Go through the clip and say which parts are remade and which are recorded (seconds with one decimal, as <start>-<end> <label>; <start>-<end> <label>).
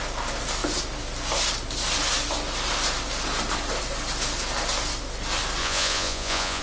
0.0-5.6 recorded; 5.6-6.6 remade